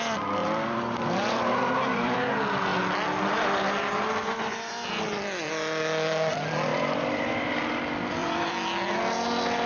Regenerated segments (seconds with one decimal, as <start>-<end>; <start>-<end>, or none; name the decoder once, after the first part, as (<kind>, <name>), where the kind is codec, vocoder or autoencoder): 0.4-2.2 (vocoder, BigVGAN v2); 6.7-7.5; 8.2-9.0